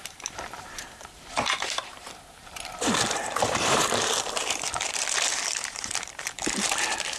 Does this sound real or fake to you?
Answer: fake